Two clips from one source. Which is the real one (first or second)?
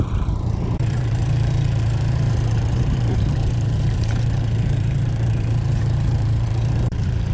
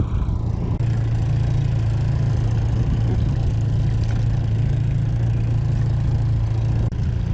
second